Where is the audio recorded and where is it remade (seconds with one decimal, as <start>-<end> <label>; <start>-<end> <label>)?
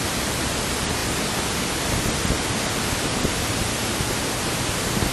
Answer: 0.0-5.1 recorded